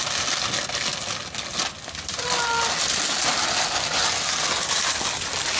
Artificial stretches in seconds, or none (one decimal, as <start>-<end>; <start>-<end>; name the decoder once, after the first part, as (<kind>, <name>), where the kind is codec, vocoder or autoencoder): none